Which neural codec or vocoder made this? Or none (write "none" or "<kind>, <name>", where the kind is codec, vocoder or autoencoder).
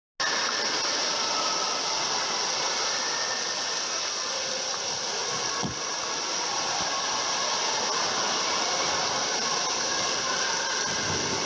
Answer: none